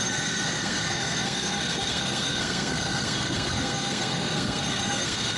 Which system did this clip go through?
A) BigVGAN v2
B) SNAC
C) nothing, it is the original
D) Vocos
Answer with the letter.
B